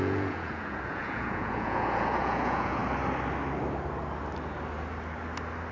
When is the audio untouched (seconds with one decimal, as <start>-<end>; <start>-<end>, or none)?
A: 2.8-5.7